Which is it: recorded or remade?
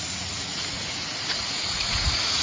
remade